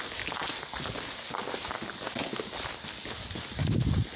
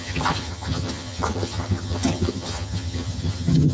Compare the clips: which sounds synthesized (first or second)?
second